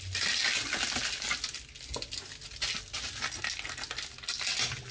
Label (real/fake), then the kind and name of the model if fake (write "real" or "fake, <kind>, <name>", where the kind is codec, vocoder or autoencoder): real